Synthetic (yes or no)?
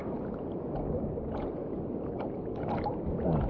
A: no